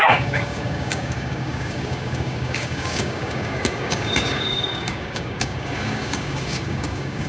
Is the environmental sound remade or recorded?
remade